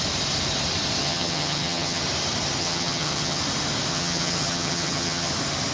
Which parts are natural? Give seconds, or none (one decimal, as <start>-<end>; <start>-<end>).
0.0-1.0; 2.0-2.6; 3.4-3.9; 5.3-5.7